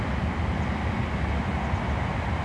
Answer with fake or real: real